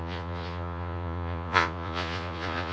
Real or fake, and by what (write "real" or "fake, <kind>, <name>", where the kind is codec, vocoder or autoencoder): fake, vocoder, Vocos